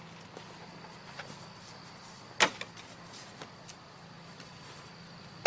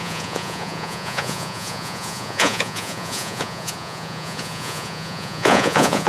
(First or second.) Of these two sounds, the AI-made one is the second